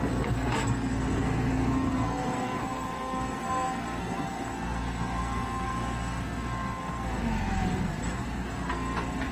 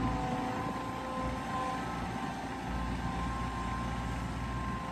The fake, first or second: first